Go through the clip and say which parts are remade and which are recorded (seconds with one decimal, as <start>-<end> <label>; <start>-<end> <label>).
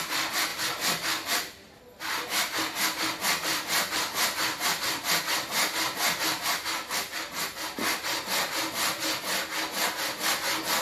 0.0-0.5 recorded; 0.5-1.8 remade; 1.8-3.5 recorded; 3.5-5.2 remade; 5.2-10.8 recorded